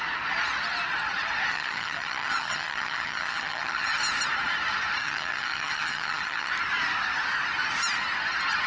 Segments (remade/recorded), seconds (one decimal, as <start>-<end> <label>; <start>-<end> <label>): 0.0-1.5 recorded; 1.5-4.0 remade; 4.0-5.0 recorded; 5.0-6.5 remade; 6.5-8.7 recorded